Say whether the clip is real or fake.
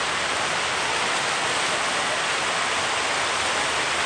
real